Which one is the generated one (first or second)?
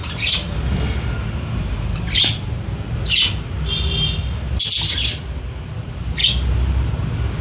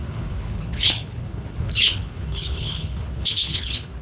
second